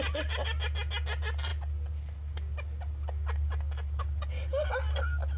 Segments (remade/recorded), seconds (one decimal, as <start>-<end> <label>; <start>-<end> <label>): 0.0-5.4 recorded